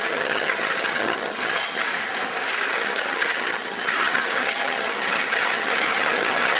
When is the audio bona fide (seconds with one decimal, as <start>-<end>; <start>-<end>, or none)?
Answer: 1.9-2.7